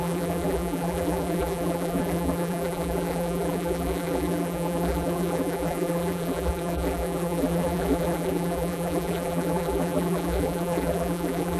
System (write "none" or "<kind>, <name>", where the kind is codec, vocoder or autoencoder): vocoder, BigVGAN v2